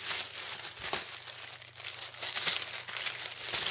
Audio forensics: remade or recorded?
recorded